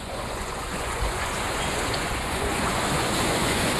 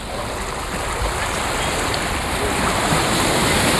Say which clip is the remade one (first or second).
first